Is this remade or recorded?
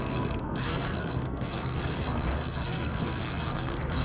remade